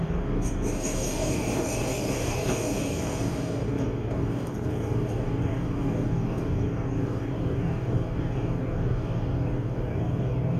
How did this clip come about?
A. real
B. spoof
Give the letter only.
B